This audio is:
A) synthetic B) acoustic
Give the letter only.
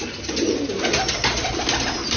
B